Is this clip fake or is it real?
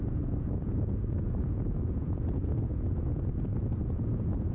fake